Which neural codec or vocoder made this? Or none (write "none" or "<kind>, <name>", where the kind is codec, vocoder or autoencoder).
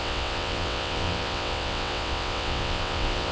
vocoder, WaveNeXt